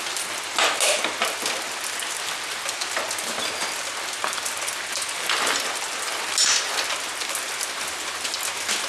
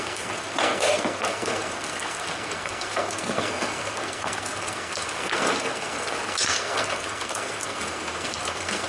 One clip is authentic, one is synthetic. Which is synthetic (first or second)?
second